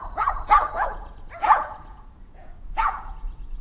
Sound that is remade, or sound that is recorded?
remade